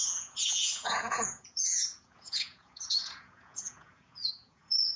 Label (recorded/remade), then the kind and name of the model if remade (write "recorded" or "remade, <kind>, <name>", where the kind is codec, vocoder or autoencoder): remade, vocoder, Vocos